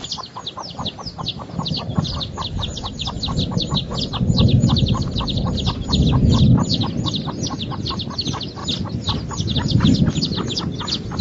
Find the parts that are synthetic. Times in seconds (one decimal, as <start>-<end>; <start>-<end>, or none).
none